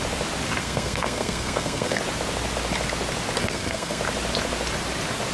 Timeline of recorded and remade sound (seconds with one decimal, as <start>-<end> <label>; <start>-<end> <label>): 0.0-0.6 recorded; 0.6-2.0 remade; 2.0-3.4 recorded; 3.4-4.0 remade; 4.0-5.3 recorded